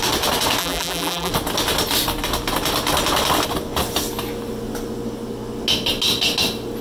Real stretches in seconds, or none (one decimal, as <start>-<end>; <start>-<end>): 0.0-0.6; 1.3-6.8